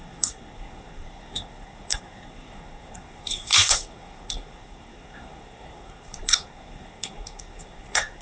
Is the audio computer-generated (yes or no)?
yes